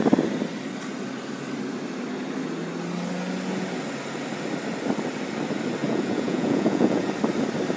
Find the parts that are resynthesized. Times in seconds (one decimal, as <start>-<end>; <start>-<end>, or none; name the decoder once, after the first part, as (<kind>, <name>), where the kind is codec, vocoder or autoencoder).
5.8-7.1 (vocoder, Vocos)